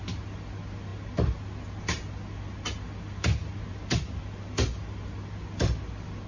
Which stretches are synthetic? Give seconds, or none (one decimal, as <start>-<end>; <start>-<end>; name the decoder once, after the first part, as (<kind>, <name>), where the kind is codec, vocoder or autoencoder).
none